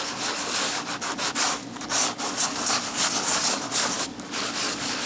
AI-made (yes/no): yes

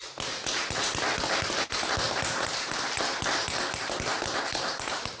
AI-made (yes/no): no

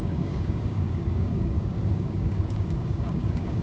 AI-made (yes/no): yes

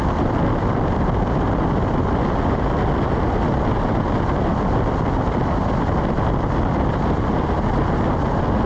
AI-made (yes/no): no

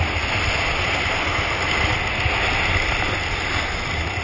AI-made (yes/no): no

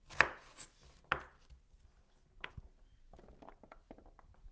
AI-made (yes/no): no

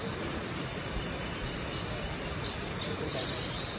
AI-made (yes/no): no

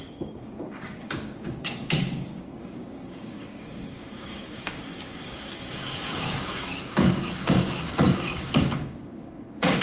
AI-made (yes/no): yes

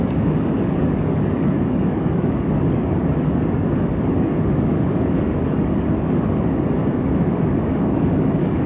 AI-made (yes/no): yes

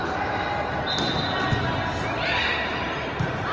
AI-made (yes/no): no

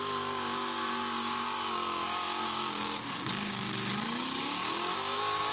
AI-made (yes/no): yes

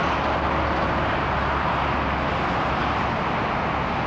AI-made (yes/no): no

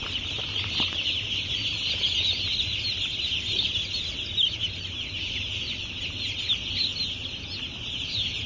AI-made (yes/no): no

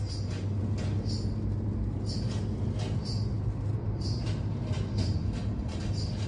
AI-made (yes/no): no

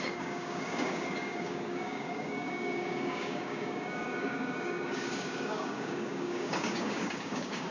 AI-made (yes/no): yes